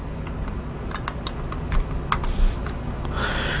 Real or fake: real